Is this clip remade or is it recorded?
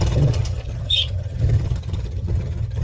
remade